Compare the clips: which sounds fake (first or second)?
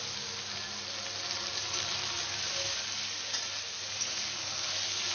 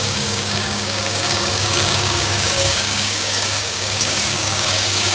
second